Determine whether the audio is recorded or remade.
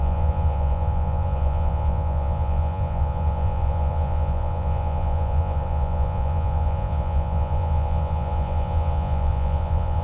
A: remade